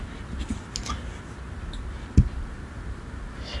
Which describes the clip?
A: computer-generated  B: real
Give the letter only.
B